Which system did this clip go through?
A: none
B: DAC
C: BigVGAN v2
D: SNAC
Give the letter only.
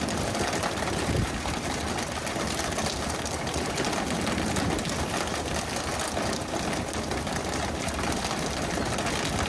A